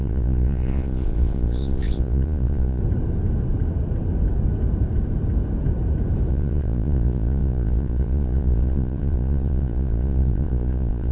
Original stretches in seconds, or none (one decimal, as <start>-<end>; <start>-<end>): 2.8-6.3